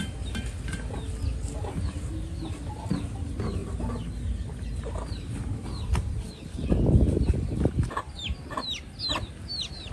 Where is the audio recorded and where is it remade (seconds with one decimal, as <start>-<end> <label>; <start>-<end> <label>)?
0.0-9.9 recorded